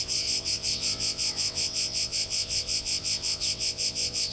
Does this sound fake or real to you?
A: fake